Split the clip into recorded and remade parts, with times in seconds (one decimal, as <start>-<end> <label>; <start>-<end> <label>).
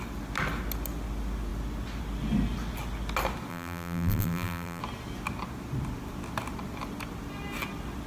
0.0-3.5 recorded; 3.5-4.8 remade; 4.8-8.1 recorded